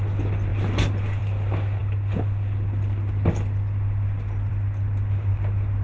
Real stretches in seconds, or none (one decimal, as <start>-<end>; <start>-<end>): 0.0-5.8